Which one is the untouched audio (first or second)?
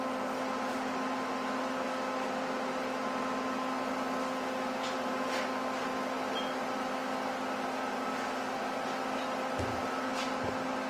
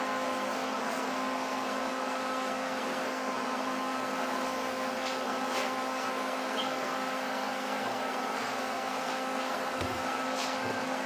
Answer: first